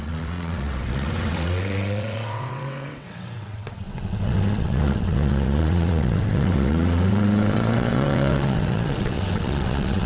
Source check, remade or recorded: remade